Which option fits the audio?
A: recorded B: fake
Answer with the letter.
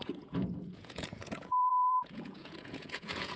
B